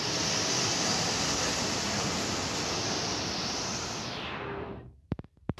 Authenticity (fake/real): fake